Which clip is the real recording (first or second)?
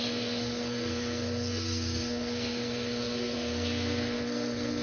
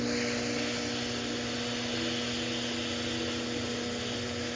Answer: second